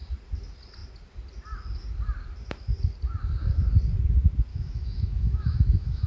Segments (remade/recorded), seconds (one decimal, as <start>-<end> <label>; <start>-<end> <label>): 0.0-4.5 recorded; 4.5-6.1 remade